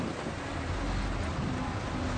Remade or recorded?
recorded